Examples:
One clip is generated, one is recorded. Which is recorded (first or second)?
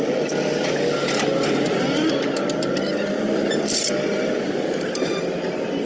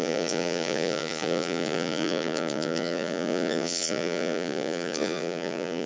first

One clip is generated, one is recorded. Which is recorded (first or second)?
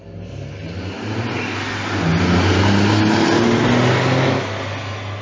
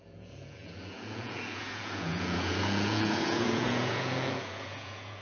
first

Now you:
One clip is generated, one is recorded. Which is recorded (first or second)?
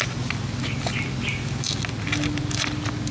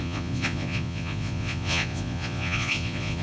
first